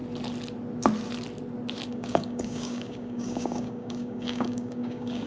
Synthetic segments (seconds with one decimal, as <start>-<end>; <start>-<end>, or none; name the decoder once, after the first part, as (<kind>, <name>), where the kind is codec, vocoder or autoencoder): 1.9-5.3 (codec, DAC)